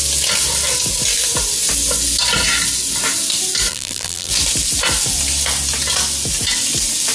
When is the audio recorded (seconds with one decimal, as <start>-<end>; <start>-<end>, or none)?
0.0-3.7; 4.3-7.1